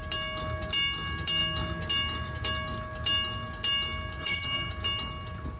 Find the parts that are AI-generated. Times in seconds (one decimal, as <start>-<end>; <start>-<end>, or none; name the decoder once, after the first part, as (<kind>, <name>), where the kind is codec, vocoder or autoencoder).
4.2-4.7 (vocoder, HiFi-GAN)